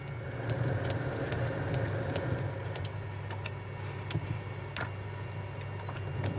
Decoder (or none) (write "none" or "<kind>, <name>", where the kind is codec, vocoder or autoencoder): none